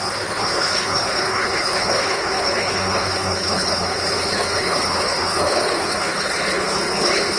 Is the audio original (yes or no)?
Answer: no